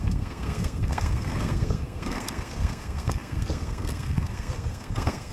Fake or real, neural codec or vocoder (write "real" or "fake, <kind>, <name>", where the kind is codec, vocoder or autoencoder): fake, codec, SNAC